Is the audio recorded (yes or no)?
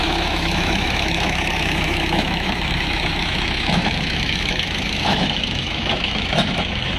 no